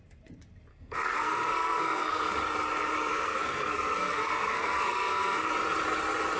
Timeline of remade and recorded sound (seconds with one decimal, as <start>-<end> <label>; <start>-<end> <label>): 0.0-0.7 recorded; 0.7-2.3 remade; 2.3-3.1 recorded; 3.1-5.5 remade; 5.5-6.4 recorded